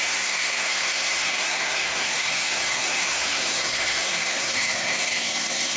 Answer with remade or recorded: remade